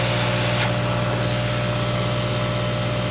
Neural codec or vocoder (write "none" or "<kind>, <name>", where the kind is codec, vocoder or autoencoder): none